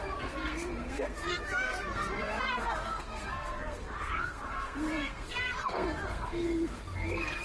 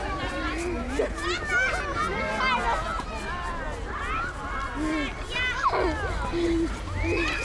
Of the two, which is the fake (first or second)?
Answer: first